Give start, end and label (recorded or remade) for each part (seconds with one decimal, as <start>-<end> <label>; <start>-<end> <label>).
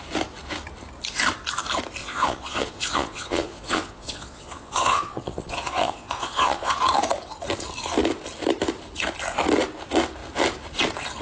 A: 0.0-2.0 recorded; 2.0-6.8 remade; 6.8-11.2 recorded